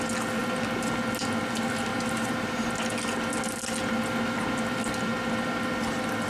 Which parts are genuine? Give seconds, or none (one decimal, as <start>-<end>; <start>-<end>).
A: 0.0-1.9; 2.7-6.3